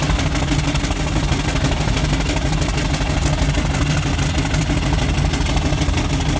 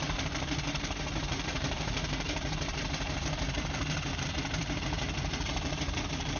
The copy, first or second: second